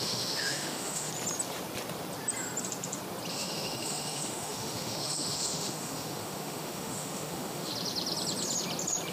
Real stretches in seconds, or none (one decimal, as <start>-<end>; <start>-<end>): 1.1-3.3; 7.7-9.1